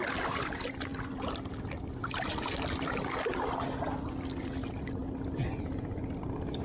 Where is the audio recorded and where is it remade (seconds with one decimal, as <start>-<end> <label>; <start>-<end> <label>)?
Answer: 0.0-6.6 recorded